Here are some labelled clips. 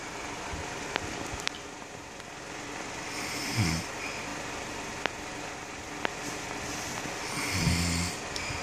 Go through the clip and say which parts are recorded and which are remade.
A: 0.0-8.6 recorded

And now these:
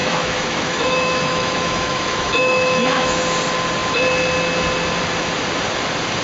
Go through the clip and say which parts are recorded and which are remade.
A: 0.0-3.2 remade; 3.2-6.2 recorded

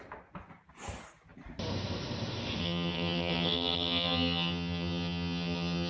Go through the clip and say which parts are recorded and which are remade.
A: 0.0-2.6 recorded; 2.6-5.9 remade